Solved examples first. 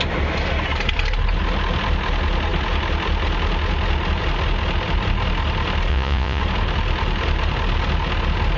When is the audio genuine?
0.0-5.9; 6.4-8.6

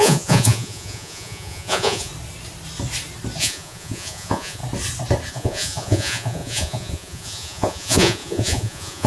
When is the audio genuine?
2.1-3.4; 4.6-5.3

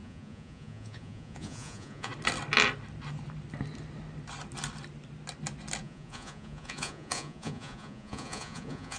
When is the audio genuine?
2.1-5.8

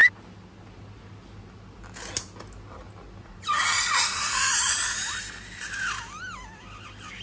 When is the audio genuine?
0.0-3.2; 5.2-7.2

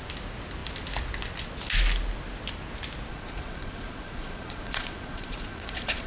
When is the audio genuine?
0.0-3.1

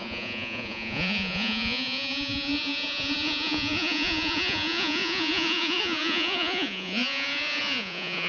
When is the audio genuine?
none

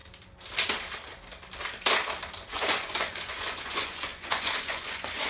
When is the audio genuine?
0.0-2.5

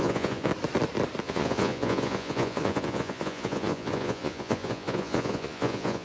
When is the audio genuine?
0.5-1.2